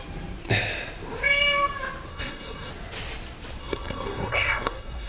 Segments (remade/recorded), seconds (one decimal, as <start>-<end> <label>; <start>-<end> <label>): 0.0-2.1 recorded; 2.1-2.7 remade; 2.7-3.6 recorded; 3.6-5.1 remade